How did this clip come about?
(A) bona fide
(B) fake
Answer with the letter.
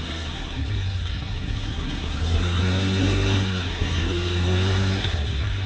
B